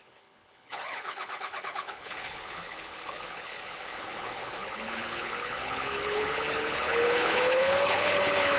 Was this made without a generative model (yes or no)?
no